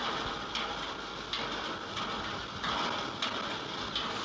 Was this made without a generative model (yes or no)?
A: yes